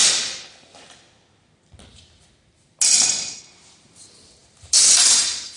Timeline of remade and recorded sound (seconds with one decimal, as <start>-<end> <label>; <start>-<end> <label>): 0.0-5.6 recorded